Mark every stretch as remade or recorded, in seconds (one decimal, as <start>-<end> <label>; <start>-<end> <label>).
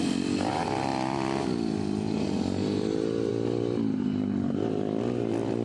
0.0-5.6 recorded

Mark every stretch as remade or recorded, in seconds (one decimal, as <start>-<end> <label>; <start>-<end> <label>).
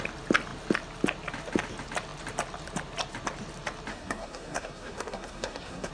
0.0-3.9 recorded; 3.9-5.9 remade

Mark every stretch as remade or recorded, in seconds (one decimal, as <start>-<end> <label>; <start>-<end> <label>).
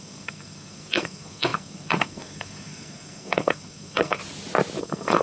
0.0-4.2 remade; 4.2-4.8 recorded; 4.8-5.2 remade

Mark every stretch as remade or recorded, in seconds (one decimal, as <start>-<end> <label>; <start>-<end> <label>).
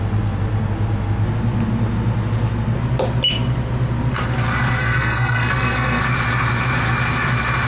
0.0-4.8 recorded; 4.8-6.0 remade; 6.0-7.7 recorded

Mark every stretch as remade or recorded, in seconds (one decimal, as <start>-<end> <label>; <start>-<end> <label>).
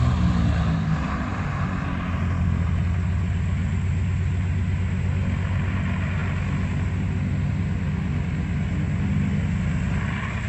0.0-10.5 recorded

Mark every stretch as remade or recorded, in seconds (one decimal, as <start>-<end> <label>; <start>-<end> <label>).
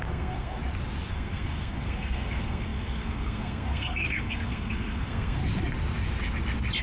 0.0-0.6 remade; 0.6-1.1 recorded; 1.1-5.4 remade; 5.4-6.8 recorded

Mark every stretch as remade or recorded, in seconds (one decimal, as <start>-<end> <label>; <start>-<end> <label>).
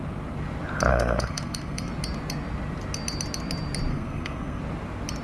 0.0-0.9 recorded; 0.9-1.9 remade; 1.9-3.9 recorded; 3.9-4.6 remade; 4.6-5.2 recorded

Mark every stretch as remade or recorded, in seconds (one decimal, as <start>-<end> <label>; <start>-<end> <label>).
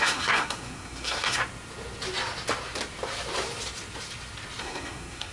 0.0-1.4 remade; 1.4-4.6 recorded; 4.6-5.3 remade